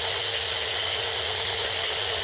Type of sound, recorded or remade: recorded